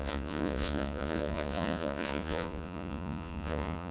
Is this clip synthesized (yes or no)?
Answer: yes